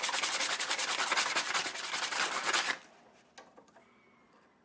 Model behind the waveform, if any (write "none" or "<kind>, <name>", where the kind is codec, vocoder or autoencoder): none